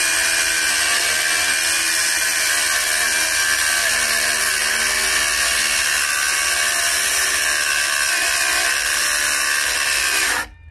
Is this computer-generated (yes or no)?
no